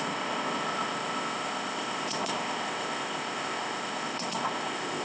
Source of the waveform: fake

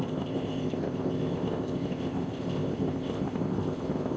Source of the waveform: fake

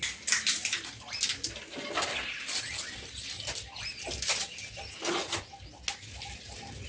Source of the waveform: real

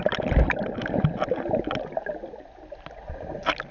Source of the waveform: real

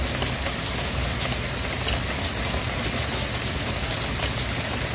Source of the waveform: real